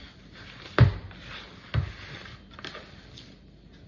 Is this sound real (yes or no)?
yes